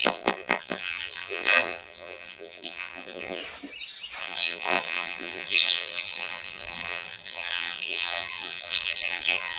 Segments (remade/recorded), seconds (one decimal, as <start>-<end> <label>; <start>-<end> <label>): 0.0-3.4 remade; 3.4-4.2 recorded; 4.2-9.6 remade